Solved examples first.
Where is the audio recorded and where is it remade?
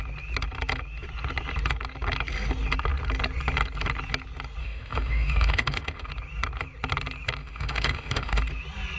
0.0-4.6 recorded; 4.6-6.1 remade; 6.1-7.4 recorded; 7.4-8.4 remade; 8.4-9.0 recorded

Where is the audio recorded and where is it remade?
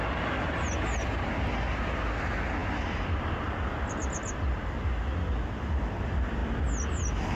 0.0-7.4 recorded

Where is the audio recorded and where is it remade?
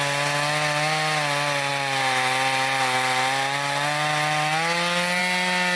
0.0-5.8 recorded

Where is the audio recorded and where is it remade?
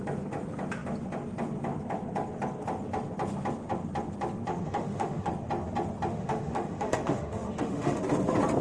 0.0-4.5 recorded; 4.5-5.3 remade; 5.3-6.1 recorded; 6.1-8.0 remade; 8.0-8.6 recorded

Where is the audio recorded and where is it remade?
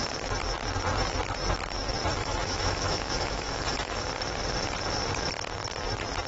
0.0-2.1 recorded; 2.1-4.1 remade; 4.1-6.3 recorded